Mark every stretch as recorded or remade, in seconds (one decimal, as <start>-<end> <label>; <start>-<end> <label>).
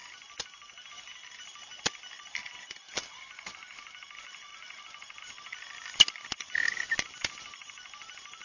0.0-8.4 recorded